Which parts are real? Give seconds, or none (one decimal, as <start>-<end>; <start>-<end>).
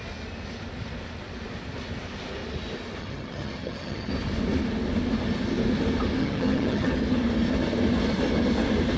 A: 0.0-3.0; 4.1-6.2; 6.9-9.0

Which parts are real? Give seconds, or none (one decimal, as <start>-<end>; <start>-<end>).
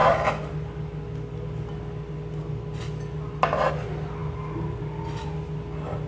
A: 0.0-6.1